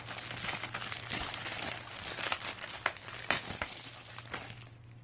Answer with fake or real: real